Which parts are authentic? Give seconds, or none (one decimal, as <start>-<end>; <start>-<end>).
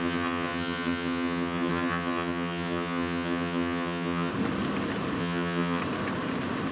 4.3-5.2; 5.8-6.7